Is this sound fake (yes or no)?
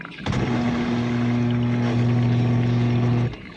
no